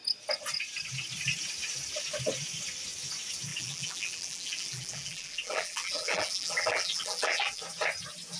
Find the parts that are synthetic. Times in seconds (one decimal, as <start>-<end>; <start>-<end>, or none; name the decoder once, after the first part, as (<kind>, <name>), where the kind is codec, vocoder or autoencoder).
3.5-7.6 (vocoder, BigVGAN v2)

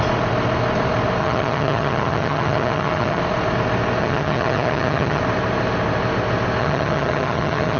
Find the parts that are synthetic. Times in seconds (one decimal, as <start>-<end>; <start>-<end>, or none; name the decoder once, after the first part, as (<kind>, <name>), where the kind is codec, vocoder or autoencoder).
1.2-3.2 (vocoder, HiFi-GAN); 4.0-5.2; 6.6-7.8

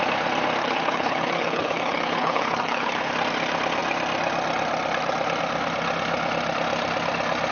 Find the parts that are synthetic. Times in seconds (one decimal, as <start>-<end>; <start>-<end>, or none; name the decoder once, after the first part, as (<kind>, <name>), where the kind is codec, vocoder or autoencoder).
0.6-3.1 (codec, HILCodec)

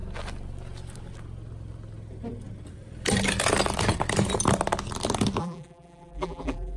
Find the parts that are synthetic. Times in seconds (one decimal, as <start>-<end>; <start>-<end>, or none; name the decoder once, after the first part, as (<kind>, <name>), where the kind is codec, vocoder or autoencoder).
5.4-6.8 (vocoder, BigVGAN v2)

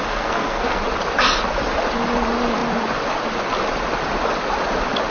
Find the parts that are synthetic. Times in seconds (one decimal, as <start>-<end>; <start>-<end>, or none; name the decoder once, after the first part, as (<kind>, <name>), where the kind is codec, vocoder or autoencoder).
0.0-0.8 (codec, SNAC)

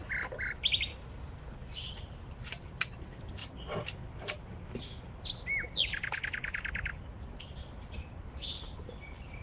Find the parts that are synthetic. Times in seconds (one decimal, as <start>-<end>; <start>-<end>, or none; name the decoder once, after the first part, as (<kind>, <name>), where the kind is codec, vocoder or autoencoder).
1.6-2.7 (vocoder, BigVGAN v2)

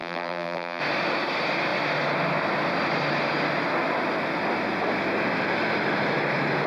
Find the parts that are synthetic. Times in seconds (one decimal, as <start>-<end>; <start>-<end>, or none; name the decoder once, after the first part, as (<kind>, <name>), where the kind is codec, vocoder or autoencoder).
0.0-0.8 (vocoder, BigVGAN v2)